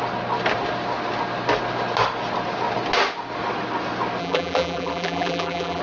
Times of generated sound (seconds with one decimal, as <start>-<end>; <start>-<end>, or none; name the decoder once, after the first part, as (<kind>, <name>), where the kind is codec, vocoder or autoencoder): 4.2-5.8 (vocoder, BigVGAN v2)